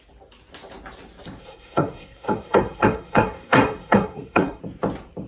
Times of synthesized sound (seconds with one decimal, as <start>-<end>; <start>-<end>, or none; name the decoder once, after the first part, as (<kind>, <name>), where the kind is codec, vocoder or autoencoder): 1.4-4.6 (codec, SNAC)